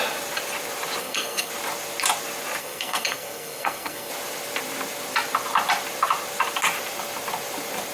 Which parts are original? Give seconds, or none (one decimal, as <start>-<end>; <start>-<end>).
0.0-1.0; 1.5-2.6; 4.1-7.9